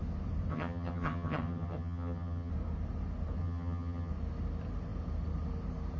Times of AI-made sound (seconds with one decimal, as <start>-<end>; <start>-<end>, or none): 0.5-2.5; 3.4-4.1